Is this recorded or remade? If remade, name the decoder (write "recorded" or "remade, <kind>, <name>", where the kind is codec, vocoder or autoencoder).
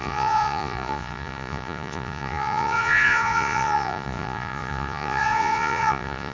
remade, vocoder, Vocos